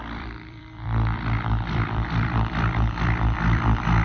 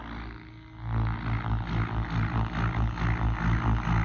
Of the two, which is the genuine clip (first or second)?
second